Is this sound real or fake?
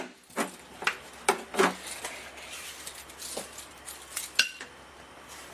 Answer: real